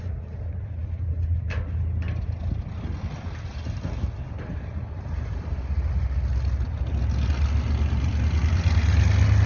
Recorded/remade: recorded